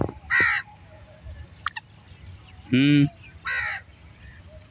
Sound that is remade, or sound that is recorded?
recorded